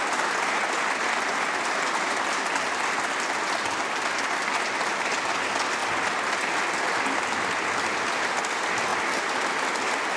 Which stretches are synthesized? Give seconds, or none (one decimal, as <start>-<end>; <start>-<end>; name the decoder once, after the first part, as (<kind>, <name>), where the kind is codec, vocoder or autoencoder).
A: none